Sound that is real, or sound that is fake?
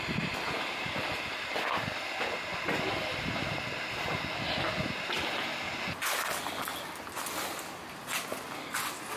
real